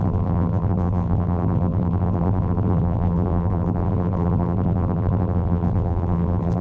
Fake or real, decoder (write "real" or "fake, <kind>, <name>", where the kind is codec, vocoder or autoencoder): fake, vocoder, BigVGAN v2